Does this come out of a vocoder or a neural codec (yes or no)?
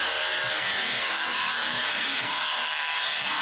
yes